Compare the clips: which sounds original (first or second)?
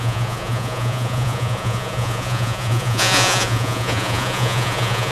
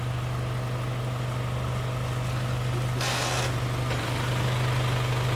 second